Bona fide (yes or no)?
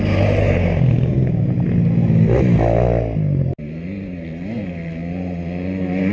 yes